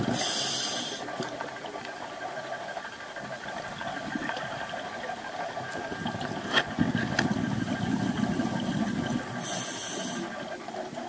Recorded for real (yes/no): yes